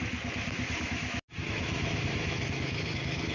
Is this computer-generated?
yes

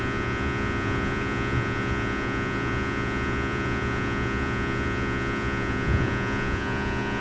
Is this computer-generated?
yes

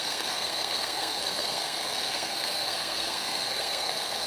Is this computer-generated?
yes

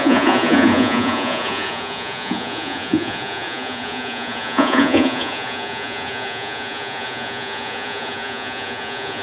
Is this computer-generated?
yes